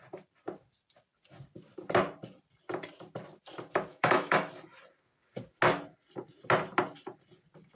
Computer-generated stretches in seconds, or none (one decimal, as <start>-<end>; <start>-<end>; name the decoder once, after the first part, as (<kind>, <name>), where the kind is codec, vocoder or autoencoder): 3.9-4.5 (autoencoder, DAC-VAE)